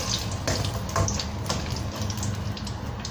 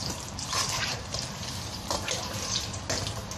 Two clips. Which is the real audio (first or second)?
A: first